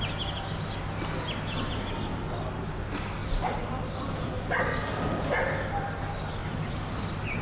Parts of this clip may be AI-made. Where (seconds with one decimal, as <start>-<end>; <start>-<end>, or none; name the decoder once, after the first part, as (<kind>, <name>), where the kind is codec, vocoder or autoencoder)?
3.2-4.5 (vocoder, BigVGAN v2); 6.4-7.4